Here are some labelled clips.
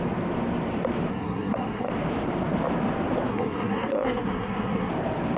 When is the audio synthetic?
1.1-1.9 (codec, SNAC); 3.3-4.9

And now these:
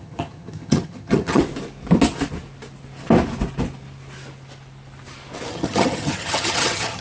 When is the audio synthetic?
0.0-1.4 (vocoder, HiFi-GAN); 5.5-7.0

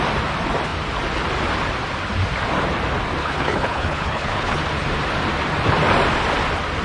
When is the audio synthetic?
3.2-4.6 (codec, HILCodec)

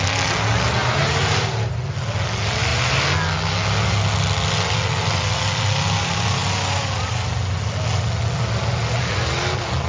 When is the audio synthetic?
0.8-1.7 (vocoder, BigVGAN v2)